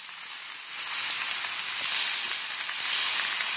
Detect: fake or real real